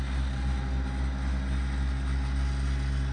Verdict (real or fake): real